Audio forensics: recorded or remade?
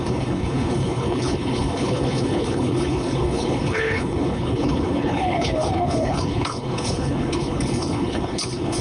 remade